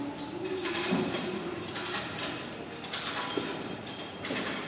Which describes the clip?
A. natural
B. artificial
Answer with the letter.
A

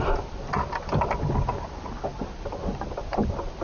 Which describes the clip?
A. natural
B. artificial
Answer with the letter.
A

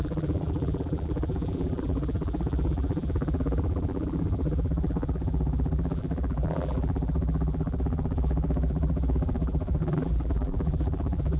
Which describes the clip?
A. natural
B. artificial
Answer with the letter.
B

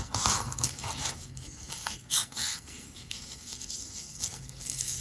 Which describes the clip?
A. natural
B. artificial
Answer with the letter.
B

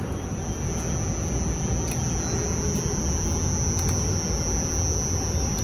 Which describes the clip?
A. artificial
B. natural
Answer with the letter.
B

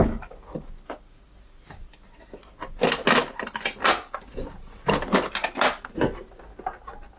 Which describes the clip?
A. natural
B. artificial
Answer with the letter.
A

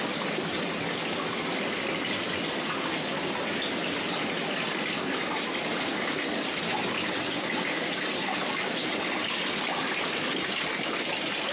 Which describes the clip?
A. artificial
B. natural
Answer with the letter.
B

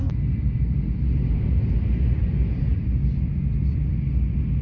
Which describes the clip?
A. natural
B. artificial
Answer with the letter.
A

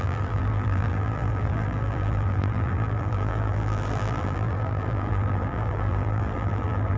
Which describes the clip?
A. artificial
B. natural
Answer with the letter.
A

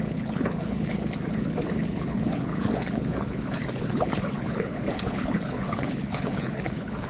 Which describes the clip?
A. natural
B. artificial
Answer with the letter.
B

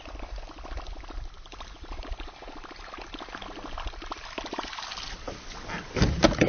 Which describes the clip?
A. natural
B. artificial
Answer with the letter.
A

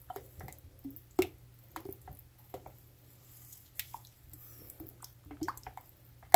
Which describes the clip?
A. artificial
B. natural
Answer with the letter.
B